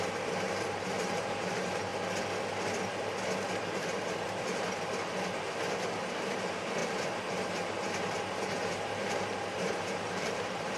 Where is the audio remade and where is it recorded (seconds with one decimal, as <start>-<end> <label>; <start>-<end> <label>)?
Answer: 0.0-1.9 remade; 1.9-6.1 recorded; 6.1-10.8 remade